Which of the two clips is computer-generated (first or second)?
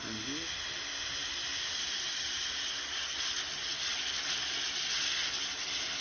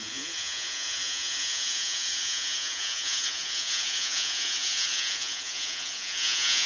second